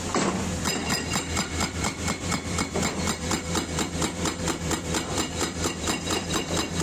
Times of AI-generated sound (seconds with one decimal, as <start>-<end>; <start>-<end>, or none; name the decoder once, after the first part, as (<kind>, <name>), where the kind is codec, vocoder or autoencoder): 0.0-6.8 (vocoder, BigVGAN v2)